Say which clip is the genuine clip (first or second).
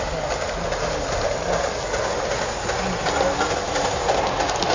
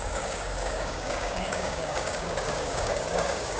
first